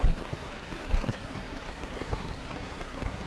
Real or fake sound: fake